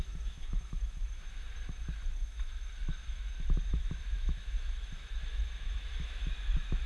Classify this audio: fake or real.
fake